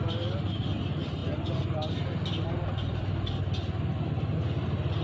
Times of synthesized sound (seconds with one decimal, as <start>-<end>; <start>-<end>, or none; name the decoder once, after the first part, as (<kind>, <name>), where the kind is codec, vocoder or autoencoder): none

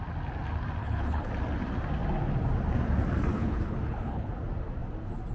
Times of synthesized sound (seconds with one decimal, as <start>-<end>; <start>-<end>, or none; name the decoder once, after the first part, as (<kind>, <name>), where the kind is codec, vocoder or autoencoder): 0.8-1.3 (codec, HILCodec); 3.3-4.3

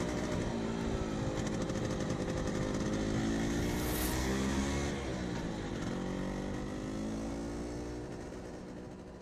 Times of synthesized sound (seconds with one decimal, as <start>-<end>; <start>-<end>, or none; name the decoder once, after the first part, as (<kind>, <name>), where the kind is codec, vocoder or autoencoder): 4.2-4.7 (codec, SNAC)

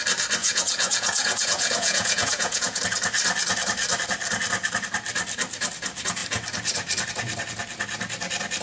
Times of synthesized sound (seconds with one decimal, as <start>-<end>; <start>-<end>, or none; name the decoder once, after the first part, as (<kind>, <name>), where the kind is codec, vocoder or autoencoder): 0.4-2.8 (vocoder, Vocos)

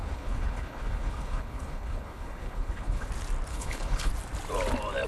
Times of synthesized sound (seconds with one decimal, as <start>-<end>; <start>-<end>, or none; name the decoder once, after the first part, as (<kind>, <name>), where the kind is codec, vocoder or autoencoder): 0.0-3.1 (codec, HILCodec); 3.5-4.1